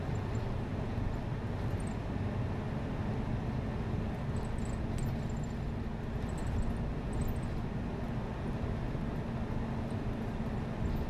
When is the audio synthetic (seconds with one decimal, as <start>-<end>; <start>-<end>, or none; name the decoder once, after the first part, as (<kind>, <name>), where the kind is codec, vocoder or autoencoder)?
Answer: none